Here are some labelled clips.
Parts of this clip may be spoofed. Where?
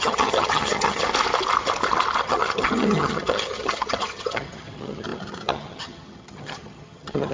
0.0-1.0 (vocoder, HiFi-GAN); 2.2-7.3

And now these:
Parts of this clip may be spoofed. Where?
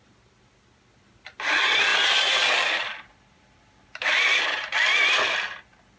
1.9-4.4 (vocoder, BigVGAN v2)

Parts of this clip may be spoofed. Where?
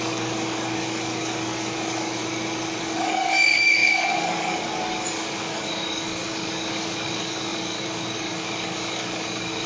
0.0-2.2 (codec, DAC); 2.8-9.7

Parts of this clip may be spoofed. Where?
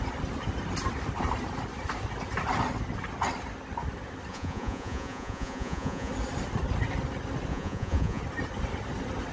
4.3-6.1 (vocoder, Vocos); 7.5-8.2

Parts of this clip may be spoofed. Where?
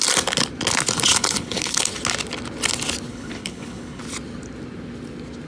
1.1-1.9 (codec, HILCodec); 3.1-4.0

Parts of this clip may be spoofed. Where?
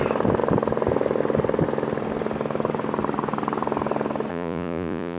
4.3-5.2 (vocoder, Vocos)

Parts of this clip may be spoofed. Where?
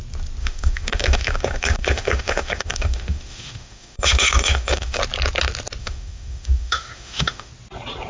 0.4-5.0 (autoencoder, DAC-VAE); 5.8-7.5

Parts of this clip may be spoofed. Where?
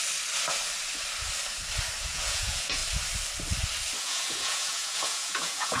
2.0-2.8 (vocoder, Vocos); 4.0-5.8